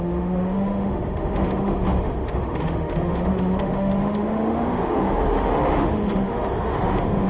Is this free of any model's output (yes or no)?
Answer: no